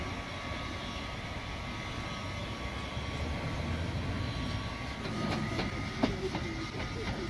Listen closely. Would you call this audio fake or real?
real